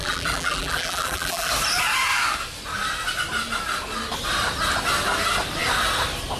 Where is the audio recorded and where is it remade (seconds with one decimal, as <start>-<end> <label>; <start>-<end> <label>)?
0.0-1.5 remade; 1.5-6.4 recorded